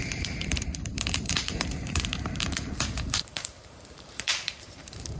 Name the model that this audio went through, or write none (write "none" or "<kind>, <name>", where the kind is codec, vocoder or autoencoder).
vocoder, BigVGAN v2